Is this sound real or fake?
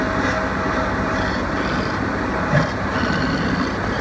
real